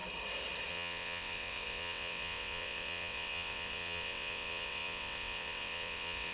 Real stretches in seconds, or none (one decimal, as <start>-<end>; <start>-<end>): 0.0-0.7